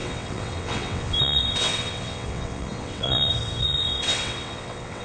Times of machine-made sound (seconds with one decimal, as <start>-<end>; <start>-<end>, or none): 0.0-5.0